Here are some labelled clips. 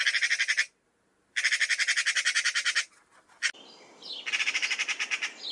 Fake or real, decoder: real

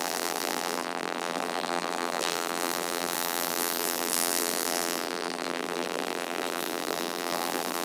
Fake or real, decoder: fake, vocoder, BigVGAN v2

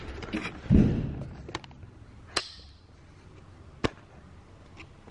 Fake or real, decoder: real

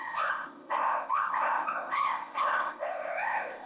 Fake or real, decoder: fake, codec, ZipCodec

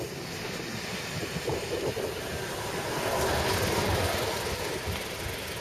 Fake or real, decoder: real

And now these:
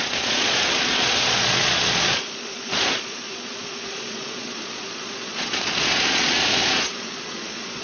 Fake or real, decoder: fake, vocoder, Vocos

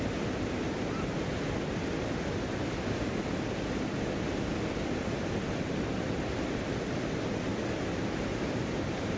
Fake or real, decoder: real